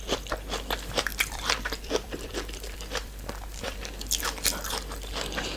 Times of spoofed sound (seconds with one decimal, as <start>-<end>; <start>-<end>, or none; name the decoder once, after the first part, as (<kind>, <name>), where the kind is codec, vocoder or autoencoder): 1.1-3.8 (vocoder, BigVGAN v2)